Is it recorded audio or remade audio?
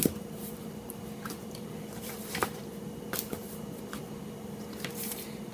remade